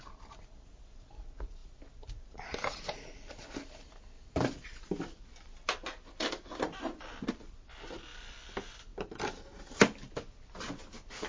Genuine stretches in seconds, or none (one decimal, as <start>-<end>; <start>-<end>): 0.0-1.6; 6.8-8.9; 10.1-11.3